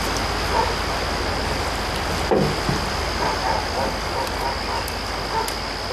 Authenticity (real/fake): real